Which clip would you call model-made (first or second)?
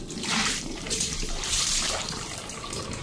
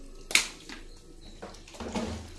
first